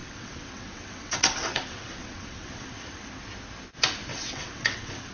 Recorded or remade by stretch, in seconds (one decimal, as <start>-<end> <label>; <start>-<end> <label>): 0.0-3.1 remade; 3.1-4.1 recorded; 4.1-5.1 remade